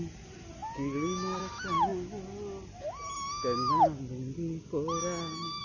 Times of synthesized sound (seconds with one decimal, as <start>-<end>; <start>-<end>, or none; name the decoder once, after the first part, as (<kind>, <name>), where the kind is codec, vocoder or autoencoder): none